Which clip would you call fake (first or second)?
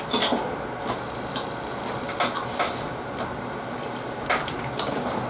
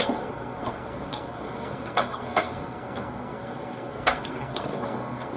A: second